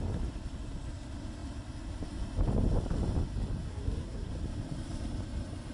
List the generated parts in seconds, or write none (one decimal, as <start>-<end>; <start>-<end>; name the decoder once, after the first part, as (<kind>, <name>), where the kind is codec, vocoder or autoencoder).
3.7-4.3 (codec, SNAC)